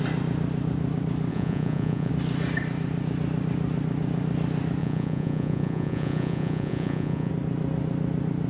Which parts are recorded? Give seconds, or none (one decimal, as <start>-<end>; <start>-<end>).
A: 0.0-1.3; 2.1-4.8; 7.3-8.5